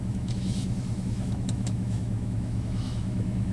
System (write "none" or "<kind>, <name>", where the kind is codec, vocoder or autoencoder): autoencoder, DAC-VAE